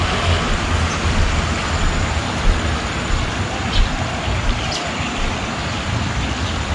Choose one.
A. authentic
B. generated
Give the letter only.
A